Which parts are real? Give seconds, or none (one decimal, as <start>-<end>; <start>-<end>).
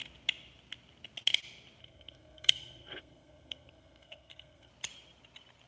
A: 0.0-1.8; 4.7-5.7